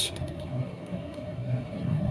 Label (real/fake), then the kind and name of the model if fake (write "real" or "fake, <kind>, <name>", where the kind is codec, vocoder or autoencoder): fake, codec, SNAC